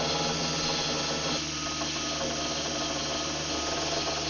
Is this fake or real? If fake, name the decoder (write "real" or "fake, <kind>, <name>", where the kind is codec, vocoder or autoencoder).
real